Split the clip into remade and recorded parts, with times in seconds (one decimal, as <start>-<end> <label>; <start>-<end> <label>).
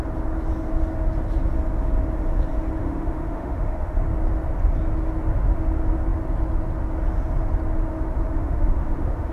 0.0-2.8 recorded; 2.8-4.0 remade; 4.0-8.4 recorded; 8.4-9.3 remade